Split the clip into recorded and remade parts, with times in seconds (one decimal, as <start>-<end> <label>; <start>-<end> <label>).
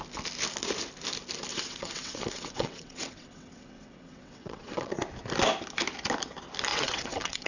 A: 0.0-1.5 recorded; 1.5-4.9 remade; 4.9-6.7 recorded; 6.7-7.5 remade